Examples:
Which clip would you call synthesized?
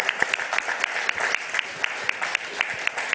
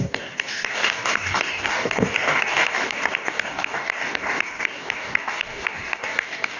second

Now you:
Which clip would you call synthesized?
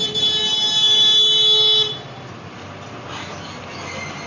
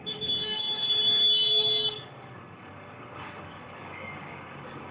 second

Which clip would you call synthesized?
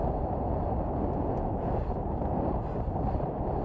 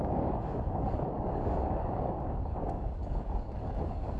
second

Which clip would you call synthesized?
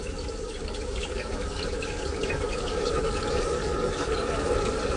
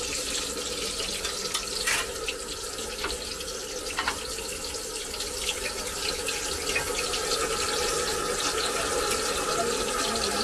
first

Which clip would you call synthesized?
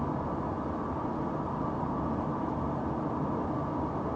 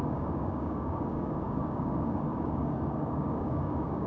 second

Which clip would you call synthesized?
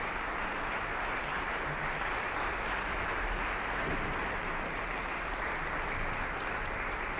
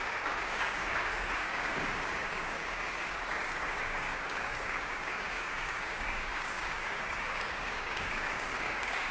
second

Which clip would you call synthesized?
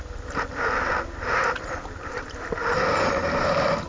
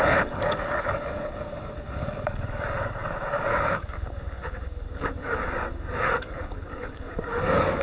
second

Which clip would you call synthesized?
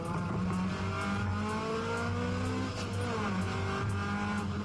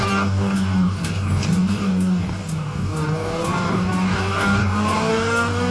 second